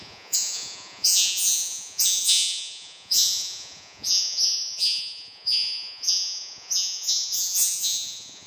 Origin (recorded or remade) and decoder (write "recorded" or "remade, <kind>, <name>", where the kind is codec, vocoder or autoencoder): remade, vocoder, Vocos